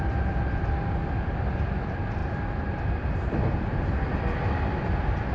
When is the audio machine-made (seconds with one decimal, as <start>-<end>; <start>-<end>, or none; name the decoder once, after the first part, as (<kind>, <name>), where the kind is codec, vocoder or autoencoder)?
none